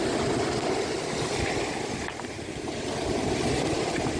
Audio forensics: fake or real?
real